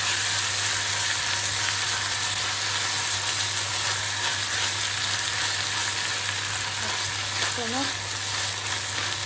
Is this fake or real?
real